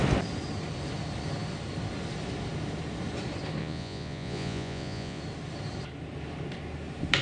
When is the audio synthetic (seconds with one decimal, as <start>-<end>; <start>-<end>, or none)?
3.6-5.2